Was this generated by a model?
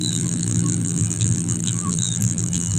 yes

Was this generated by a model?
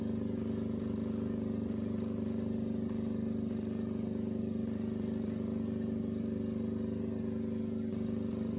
no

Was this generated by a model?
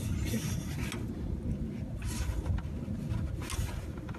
no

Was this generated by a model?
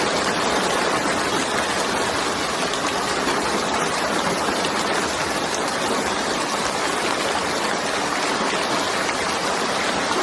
no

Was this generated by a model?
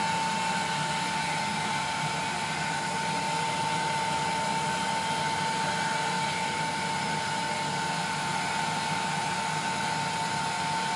no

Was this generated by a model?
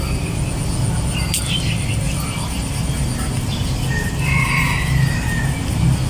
no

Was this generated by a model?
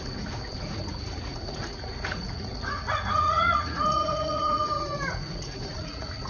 yes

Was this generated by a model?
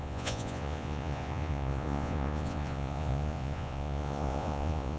yes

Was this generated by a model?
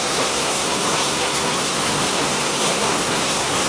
yes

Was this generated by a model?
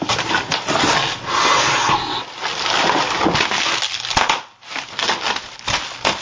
no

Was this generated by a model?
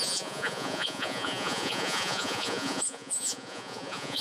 yes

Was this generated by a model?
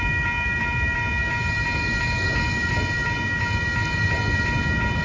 no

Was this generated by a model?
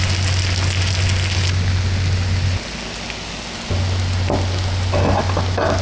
no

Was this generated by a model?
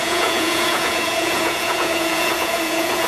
yes